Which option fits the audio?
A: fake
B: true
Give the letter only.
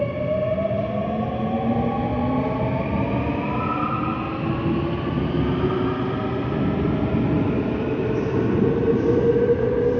B